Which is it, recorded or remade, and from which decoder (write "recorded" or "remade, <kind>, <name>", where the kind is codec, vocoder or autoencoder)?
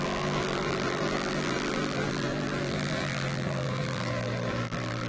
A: remade, vocoder, BigVGAN v2